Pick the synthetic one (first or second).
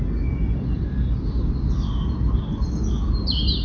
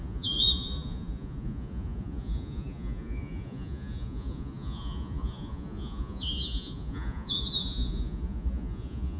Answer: second